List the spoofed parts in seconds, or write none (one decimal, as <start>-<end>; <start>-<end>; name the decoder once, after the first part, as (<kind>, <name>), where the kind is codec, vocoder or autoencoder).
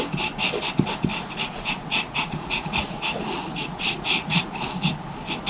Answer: 1.1-4.4 (vocoder, Vocos)